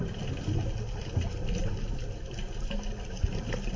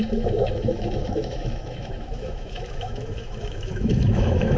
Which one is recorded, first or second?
first